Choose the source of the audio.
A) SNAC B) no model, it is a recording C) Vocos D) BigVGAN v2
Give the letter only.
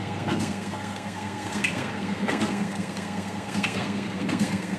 A